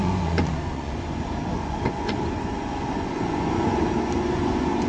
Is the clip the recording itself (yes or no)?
no